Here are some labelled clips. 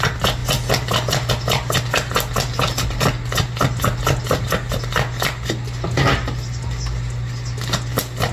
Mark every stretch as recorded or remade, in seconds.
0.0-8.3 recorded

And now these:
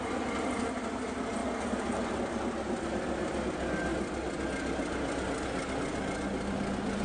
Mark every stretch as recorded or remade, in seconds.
0.0-7.0 recorded

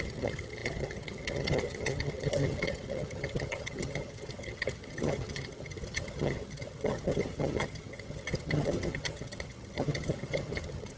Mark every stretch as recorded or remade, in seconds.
0.0-11.0 remade

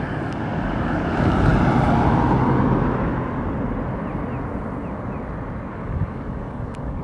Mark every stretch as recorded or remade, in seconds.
0.0-1.5 remade; 1.5-5.7 recorded; 5.7-7.0 remade

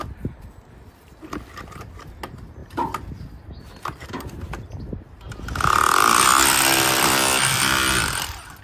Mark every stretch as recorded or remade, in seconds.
0.0-8.6 recorded

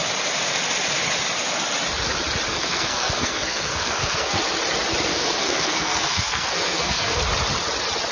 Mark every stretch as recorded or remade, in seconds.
0.0-2.5 recorded; 2.5-4.4 remade; 4.4-5.1 recorded; 5.1-7.2 remade; 7.2-8.1 recorded

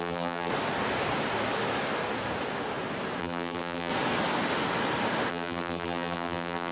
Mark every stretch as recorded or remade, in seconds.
0.0-0.5 remade; 0.5-3.2 recorded; 3.2-3.9 remade; 3.9-5.3 recorded; 5.3-6.7 remade